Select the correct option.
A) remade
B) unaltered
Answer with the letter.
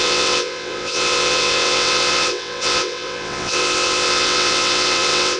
A